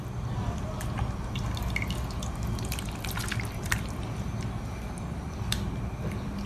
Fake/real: real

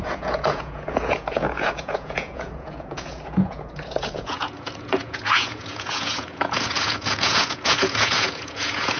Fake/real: fake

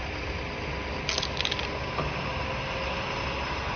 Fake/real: real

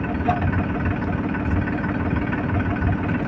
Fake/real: real